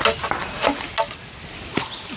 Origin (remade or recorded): recorded